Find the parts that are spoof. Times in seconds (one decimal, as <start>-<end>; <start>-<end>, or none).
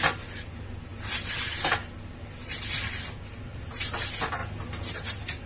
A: none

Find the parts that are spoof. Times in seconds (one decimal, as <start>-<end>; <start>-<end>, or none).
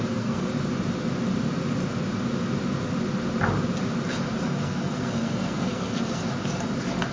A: 0.0-0.5; 4.4-6.2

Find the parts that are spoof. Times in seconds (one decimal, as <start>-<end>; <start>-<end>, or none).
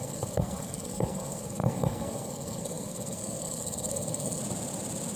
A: 0.0-4.4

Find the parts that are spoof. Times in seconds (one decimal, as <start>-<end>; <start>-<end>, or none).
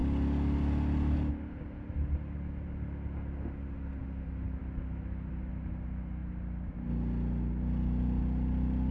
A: none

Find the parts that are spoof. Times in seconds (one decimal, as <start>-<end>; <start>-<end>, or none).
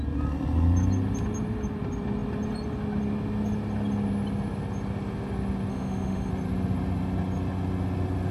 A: 5.7-6.3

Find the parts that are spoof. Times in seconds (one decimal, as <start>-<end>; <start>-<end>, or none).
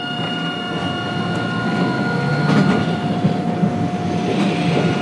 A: none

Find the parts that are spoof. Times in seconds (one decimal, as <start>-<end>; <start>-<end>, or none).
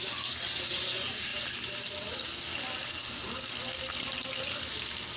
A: none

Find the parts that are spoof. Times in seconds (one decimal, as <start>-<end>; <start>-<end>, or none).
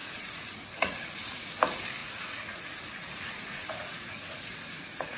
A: 0.0-1.5; 2.0-5.2